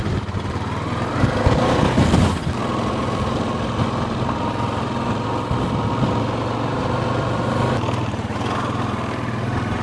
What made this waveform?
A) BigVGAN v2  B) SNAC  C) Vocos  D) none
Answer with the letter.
D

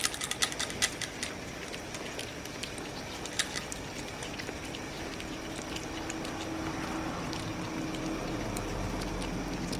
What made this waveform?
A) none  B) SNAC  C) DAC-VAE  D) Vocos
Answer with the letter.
A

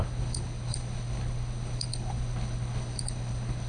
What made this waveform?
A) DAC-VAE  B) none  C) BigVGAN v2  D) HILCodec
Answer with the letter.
D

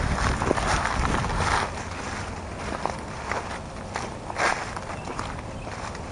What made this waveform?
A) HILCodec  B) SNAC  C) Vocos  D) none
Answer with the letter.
D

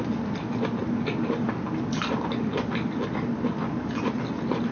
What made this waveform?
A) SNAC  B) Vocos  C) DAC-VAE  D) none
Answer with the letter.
D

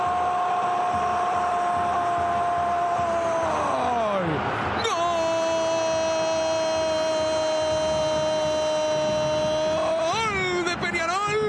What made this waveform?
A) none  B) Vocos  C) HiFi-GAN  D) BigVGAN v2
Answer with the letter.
A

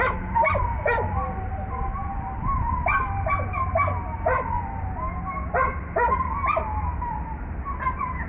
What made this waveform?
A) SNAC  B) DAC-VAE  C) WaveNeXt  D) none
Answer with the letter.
D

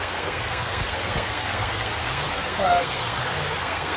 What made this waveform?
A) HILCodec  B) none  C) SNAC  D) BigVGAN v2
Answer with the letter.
C